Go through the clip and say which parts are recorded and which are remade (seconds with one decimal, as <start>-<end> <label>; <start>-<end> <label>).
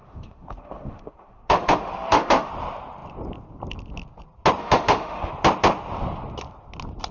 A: 0.0-2.5 remade; 2.5-4.6 recorded; 4.6-5.3 remade; 5.3-7.1 recorded